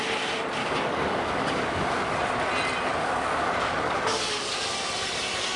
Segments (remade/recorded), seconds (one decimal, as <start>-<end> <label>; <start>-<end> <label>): 0.0-0.6 recorded; 0.6-2.2 remade; 2.2-3.0 recorded; 3.0-4.5 remade; 4.5-5.6 recorded